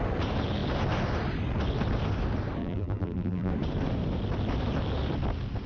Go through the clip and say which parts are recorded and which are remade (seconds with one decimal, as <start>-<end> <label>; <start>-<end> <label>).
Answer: 0.0-2.6 recorded; 2.6-3.5 remade; 3.5-5.7 recorded